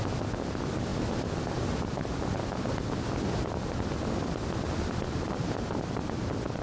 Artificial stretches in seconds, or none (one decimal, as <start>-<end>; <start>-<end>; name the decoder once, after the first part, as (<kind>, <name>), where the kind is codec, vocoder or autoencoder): none